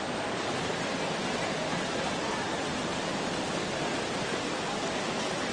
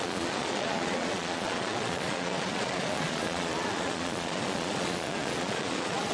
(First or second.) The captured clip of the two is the first